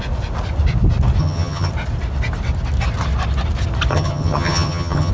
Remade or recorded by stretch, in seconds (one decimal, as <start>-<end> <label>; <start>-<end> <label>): 0.0-1.2 recorded; 1.2-1.7 remade; 1.7-3.9 recorded; 3.9-5.1 remade